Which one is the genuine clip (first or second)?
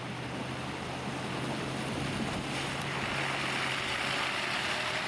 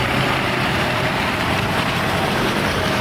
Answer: first